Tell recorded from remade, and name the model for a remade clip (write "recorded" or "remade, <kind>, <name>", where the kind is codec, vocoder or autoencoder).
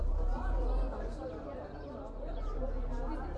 recorded